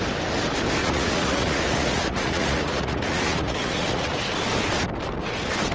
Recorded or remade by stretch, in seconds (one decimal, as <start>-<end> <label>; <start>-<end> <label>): 0.0-0.8 recorded; 0.8-4.2 remade; 4.2-5.7 recorded